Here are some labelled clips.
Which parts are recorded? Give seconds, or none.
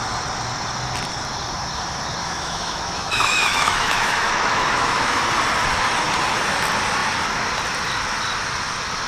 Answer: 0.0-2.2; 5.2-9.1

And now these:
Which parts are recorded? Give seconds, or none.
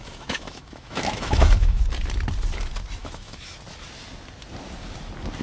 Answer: 1.8-3.0; 3.5-5.4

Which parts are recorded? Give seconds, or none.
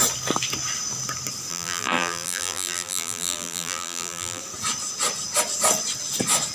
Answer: 0.0-1.5; 4.4-6.5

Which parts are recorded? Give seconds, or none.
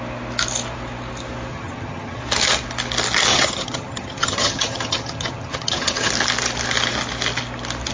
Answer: 0.0-1.5; 2.2-3.3; 6.1-7.9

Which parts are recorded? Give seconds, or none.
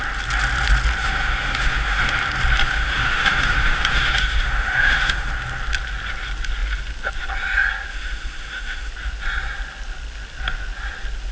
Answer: 0.0-1.0; 2.1-2.6; 5.3-7.9; 8.9-11.3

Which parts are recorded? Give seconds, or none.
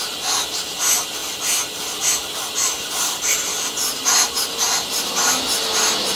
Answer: 0.0-6.1